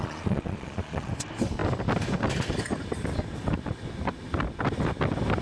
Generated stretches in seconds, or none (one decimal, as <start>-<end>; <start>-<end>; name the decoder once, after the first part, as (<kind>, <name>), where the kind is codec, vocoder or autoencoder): 0.0-1.1 (vocoder, Vocos)